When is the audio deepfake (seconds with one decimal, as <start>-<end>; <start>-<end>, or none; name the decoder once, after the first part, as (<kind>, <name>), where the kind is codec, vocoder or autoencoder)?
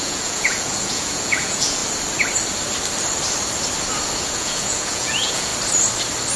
0.0-1.8 (vocoder, Vocos); 4.2-5.5